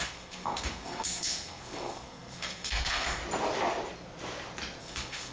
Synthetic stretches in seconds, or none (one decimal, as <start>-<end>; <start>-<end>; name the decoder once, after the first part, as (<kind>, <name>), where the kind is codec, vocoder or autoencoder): 0.0-3.2 (codec, SNAC); 4.8-5.3